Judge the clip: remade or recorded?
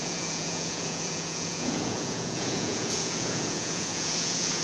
remade